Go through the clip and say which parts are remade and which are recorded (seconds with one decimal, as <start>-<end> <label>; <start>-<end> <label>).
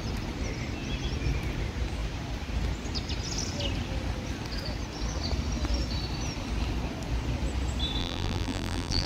0.0-8.0 recorded; 8.0-9.1 remade